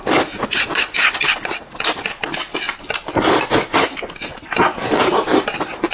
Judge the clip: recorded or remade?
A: recorded